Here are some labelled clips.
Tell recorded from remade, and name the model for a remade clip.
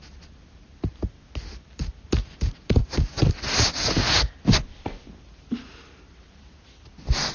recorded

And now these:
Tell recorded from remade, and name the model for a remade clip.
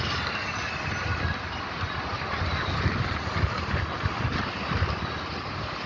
recorded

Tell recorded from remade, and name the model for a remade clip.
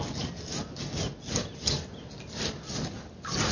recorded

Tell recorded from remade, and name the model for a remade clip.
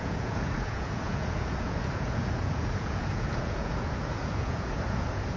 remade, vocoder, Vocos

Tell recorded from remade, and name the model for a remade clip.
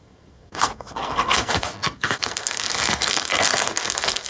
remade, codec, SNAC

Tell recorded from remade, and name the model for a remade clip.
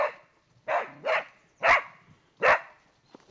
recorded